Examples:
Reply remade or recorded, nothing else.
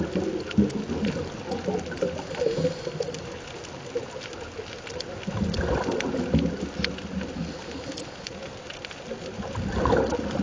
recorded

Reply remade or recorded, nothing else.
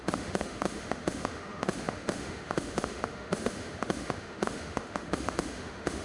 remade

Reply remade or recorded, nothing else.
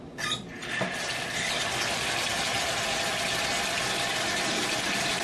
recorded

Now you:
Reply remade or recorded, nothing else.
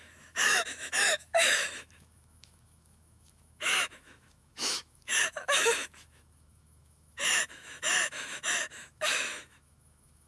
remade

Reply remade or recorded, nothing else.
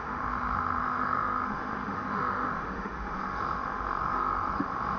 remade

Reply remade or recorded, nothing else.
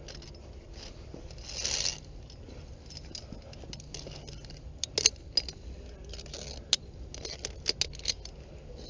recorded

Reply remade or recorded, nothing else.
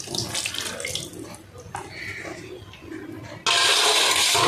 recorded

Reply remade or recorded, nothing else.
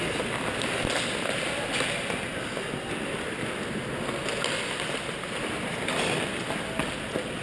recorded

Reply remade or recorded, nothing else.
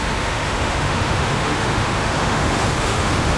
remade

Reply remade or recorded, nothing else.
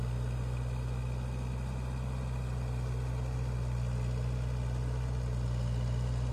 recorded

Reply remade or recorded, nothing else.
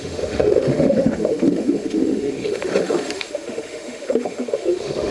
remade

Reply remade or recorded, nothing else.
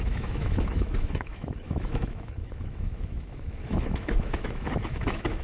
remade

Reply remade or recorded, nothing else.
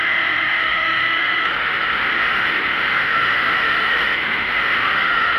remade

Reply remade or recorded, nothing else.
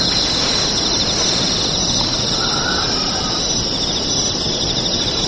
recorded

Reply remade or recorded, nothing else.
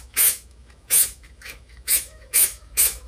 remade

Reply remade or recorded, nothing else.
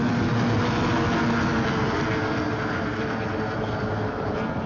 recorded